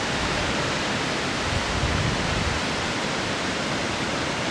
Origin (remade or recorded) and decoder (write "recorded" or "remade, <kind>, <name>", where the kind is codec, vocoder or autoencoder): remade, vocoder, BigVGAN v2